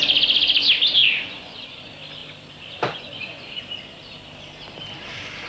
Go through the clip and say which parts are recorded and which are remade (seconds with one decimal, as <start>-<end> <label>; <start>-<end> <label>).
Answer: 0.0-1.0 recorded; 1.0-1.9 remade; 1.9-2.9 recorded; 2.9-3.6 remade; 3.6-5.5 recorded